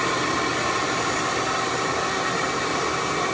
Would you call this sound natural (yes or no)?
yes